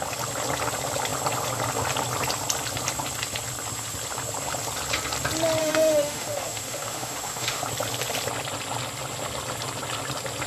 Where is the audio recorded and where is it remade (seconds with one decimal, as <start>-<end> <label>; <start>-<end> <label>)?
0.0-5.6 recorded; 5.6-7.6 remade; 7.6-10.5 recorded